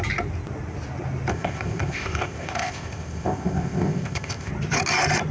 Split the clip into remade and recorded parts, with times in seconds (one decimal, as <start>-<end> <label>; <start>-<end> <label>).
0.0-1.3 recorded; 1.3-4.5 remade; 4.5-5.3 recorded